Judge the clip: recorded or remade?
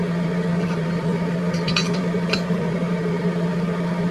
remade